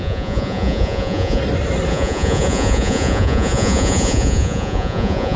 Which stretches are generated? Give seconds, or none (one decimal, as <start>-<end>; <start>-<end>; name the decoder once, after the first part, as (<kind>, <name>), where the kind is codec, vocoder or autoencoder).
0.0-1.4 (vocoder, Vocos); 1.9-5.4